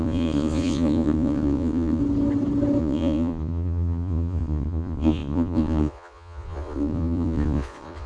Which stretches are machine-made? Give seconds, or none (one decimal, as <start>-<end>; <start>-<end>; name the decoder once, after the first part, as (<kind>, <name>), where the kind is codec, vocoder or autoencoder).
0.0-2.0 (vocoder, Vocos); 2.8-8.1